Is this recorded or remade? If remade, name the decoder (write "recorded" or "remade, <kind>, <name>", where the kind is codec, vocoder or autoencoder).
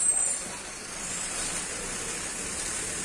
recorded